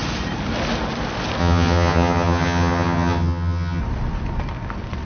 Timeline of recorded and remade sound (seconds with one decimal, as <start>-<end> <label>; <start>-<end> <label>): 0.0-1.4 recorded; 1.4-3.8 remade; 3.8-5.0 recorded